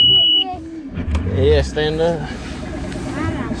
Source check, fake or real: real